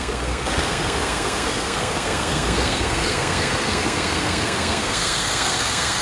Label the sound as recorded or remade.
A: remade